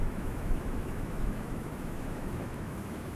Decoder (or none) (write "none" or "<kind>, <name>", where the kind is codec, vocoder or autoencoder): autoencoder, DAC-VAE